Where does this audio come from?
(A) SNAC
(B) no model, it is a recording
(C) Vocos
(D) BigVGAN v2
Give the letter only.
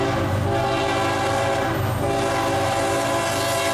B